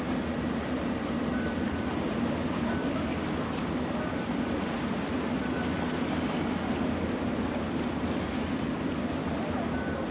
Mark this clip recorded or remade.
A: recorded